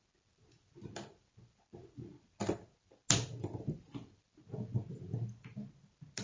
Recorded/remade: recorded